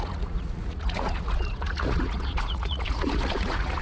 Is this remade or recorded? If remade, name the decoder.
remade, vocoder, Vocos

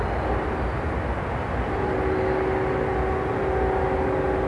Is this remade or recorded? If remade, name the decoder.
recorded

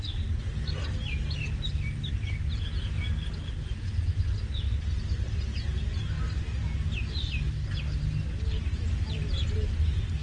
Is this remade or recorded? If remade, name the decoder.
recorded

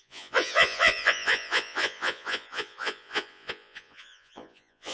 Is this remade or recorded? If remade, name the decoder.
remade, vocoder, Vocos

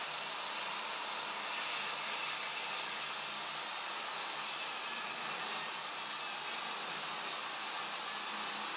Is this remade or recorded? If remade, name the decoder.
recorded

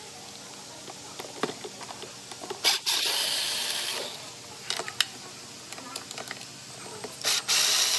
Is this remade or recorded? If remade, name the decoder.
recorded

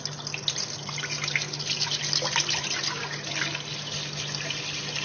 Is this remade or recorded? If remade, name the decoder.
recorded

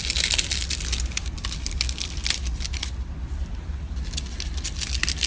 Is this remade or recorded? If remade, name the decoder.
recorded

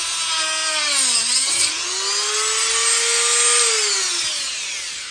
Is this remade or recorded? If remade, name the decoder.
recorded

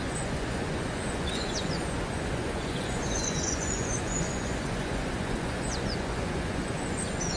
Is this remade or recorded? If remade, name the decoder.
remade, vocoder, Vocos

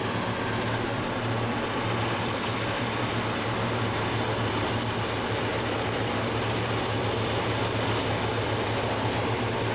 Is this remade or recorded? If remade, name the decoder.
recorded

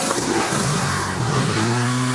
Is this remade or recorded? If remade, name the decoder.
remade, codec, SNAC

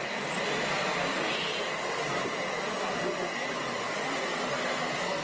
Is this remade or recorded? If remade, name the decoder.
recorded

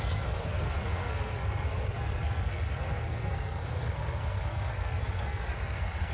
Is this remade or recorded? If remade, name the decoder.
remade, codec, SNAC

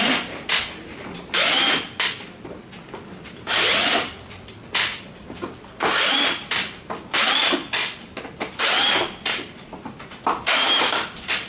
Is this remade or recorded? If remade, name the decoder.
recorded